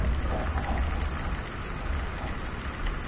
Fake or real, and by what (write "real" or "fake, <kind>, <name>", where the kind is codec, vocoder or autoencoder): real